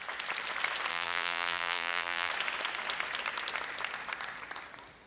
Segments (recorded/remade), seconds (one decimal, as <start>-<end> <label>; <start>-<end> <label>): 0.0-0.9 recorded; 0.9-2.3 remade; 2.3-5.1 recorded